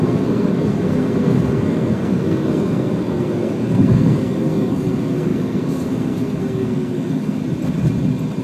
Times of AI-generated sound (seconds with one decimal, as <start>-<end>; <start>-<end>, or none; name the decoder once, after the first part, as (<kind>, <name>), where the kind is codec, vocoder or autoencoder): 0.0-7.4 (codec, SNAC)